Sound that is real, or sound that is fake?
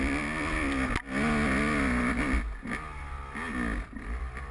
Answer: real